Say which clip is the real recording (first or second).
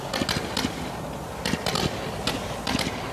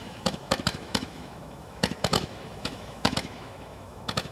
first